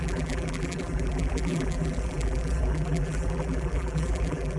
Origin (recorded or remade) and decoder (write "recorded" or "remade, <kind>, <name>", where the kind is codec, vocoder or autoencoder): remade, vocoder, BigVGAN v2